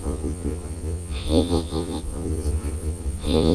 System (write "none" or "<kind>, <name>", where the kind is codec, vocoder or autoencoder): vocoder, Vocos